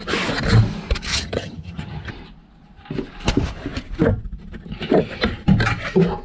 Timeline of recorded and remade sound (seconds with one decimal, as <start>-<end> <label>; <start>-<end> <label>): 0.0-1.1 recorded; 1.1-2.1 remade; 2.1-6.2 recorded